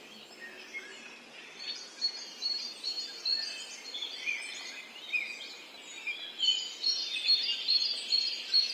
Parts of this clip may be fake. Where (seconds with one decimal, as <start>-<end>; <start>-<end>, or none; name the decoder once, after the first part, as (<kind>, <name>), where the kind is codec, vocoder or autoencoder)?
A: none